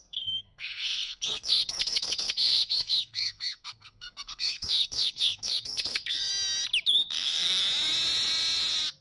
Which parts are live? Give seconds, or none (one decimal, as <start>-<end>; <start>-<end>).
6.3-6.9; 7.6-9.0